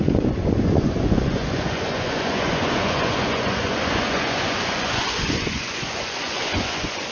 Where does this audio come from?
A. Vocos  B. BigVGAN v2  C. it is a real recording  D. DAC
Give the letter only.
A